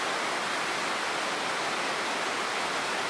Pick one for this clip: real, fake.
real